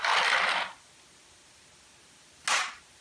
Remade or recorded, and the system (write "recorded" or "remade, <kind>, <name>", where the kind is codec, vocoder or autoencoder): recorded